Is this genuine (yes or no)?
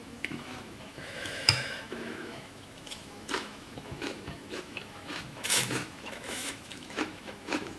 no